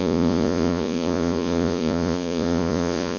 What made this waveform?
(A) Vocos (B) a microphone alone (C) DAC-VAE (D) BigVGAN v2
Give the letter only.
A